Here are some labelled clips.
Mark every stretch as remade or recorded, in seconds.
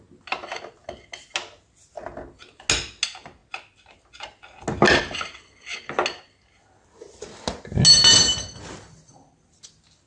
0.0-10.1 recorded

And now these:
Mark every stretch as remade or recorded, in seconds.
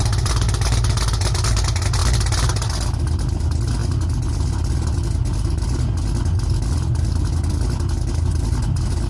0.0-9.1 recorded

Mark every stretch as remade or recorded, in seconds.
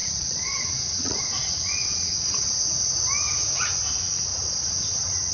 0.0-2.9 remade; 2.9-4.3 recorded; 4.3-5.3 remade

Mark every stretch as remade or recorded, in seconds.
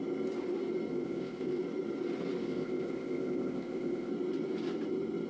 0.0-0.9 recorded; 0.9-1.6 remade; 1.6-2.4 recorded; 2.4-4.1 remade; 4.1-5.3 recorded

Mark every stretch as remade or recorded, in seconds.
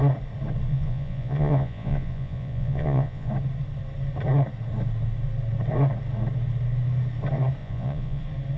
0.0-0.7 recorded; 0.7-3.3 remade; 3.3-7.6 recorded; 7.6-8.2 remade; 8.2-8.6 recorded